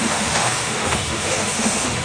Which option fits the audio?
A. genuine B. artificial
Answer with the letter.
B